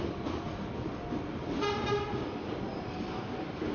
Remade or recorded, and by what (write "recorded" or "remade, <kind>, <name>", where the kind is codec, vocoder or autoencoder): recorded